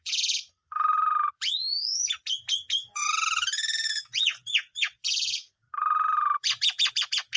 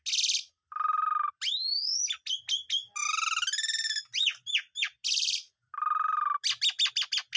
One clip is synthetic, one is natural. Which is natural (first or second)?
second